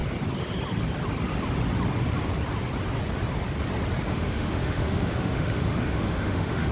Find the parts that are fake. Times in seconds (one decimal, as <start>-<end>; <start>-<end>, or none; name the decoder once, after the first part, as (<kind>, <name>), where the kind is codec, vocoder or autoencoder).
4.1-6.7 (autoencoder, DAC-VAE)